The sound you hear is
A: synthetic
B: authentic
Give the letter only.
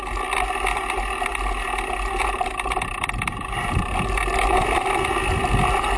B